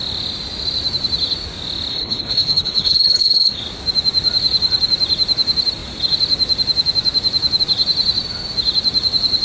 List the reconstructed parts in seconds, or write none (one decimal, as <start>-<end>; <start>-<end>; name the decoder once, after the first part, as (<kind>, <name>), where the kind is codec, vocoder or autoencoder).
1.9-3.6 (codec, HILCodec)